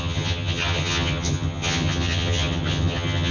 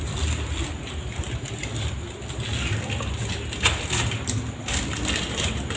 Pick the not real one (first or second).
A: first